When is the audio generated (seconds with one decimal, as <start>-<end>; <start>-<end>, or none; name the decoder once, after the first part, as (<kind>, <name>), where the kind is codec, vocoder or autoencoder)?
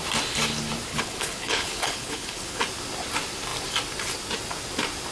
0.9-2.6 (codec, HILCodec)